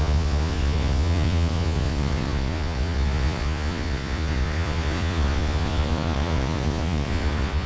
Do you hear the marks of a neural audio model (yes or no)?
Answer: yes